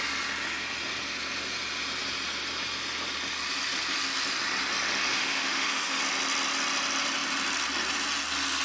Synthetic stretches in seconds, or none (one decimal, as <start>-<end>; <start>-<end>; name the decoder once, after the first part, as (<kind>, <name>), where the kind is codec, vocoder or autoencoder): 5.1-6.0 (autoencoder, DAC-VAE)